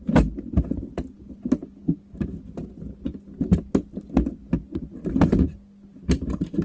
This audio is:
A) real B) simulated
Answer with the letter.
A